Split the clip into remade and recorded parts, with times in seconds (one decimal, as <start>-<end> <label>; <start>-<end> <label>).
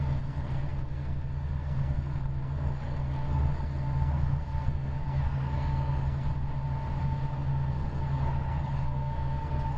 0.0-6.3 remade; 6.3-7.0 recorded; 7.0-9.8 remade